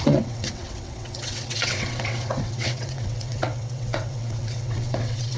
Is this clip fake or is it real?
fake